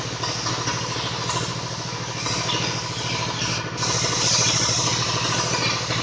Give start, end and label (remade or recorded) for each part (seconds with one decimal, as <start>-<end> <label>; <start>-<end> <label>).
0.0-6.0 recorded